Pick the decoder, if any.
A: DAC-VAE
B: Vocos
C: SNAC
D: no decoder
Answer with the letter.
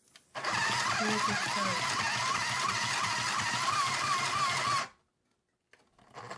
D